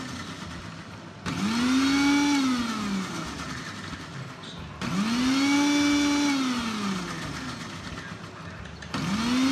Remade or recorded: recorded